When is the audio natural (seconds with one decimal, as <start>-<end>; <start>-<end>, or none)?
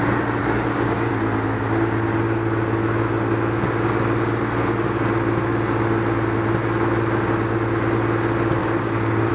0.0-0.4; 1.1-8.6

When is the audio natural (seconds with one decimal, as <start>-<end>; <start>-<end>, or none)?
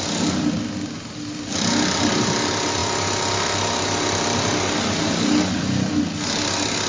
0.0-6.9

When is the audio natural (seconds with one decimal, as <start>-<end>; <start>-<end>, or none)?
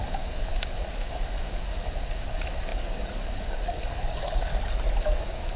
4.5-5.0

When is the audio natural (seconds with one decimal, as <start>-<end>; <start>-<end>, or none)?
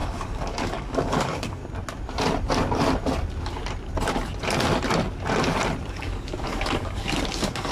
1.6-5.9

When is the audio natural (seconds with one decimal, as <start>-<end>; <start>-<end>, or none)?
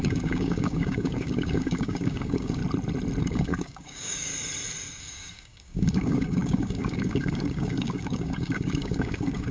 2.6-3.2; 4.3-5.0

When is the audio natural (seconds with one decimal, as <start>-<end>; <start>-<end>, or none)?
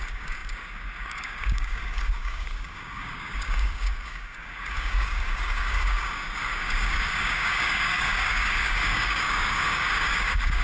none